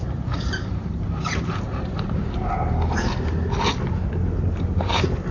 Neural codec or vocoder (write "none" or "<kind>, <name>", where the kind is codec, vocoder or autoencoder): none